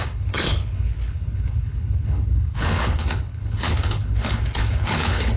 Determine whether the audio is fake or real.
fake